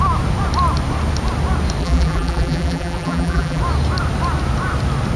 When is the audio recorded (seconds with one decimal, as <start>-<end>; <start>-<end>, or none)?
0.0-1.8; 3.6-5.2